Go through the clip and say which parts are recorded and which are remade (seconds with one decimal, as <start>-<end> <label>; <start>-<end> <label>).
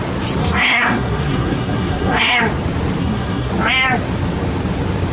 0.0-0.4 recorded; 0.4-2.4 remade; 2.4-3.0 recorded; 3.0-3.5 remade; 3.5-5.1 recorded